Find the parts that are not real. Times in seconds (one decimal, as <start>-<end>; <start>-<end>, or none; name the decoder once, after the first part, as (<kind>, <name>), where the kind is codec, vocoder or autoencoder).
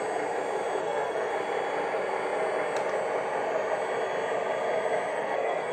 0.8-1.3 (codec, SNAC); 5.1-5.7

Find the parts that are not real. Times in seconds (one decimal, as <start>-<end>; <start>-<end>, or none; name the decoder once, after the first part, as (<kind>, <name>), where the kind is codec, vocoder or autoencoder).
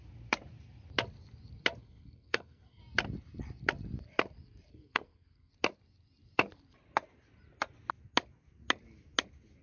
1.8-2.8 (codec, SNAC); 4.7-5.5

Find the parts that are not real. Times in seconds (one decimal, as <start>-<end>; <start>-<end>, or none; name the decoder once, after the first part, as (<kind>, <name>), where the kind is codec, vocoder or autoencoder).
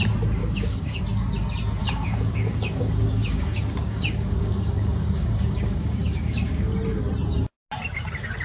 0.4-1.0 (codec, DAC); 1.8-6.7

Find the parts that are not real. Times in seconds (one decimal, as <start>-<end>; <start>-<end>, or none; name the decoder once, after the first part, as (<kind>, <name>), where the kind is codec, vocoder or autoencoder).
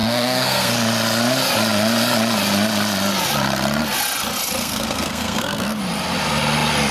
0.0-0.7 (codec, SNAC); 4.6-5.8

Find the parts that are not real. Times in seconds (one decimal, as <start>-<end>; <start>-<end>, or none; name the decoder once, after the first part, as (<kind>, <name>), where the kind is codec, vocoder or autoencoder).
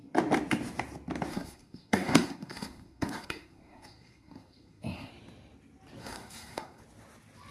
1.3-5.1 (codec, SNAC); 6.0-6.8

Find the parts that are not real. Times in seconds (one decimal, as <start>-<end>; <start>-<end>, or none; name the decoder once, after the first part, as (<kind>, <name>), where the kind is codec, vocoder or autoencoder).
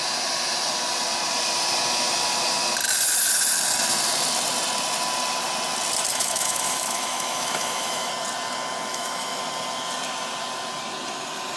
6.1-8.1 (autoencoder, DAC-VAE); 8.9-9.4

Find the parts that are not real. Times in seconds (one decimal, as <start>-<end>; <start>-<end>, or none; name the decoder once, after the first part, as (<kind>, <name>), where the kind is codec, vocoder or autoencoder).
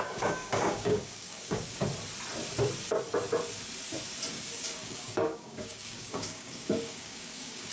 0.0-1.8 (codec, DAC); 4.3-7.7